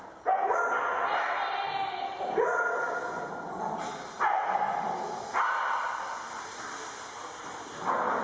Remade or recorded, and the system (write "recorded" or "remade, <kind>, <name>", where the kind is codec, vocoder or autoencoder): recorded